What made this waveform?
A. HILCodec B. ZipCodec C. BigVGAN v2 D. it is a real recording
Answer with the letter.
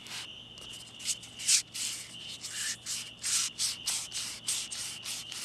D